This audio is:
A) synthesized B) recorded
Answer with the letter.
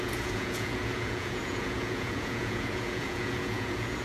A